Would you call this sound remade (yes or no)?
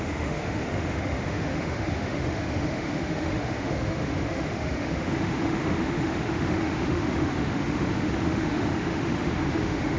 yes